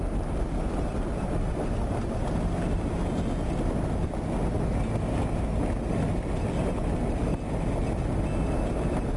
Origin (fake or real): real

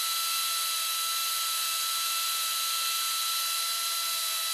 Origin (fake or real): real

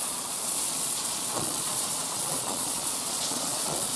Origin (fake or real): fake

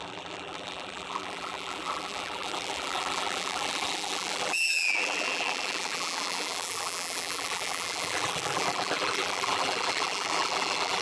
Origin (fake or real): fake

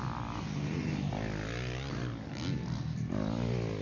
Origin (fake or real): real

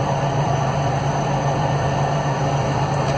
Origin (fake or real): fake